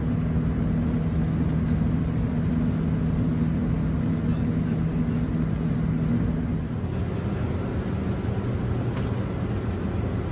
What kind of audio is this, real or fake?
real